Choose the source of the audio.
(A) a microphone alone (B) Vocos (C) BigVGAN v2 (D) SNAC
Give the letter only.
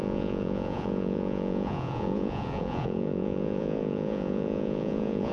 B